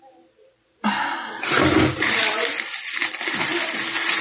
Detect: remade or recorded remade